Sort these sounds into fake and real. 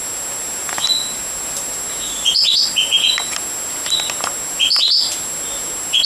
real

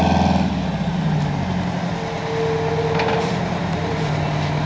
real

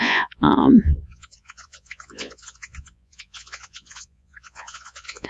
fake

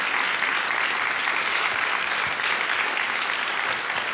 real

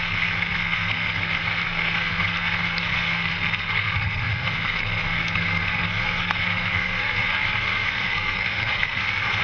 fake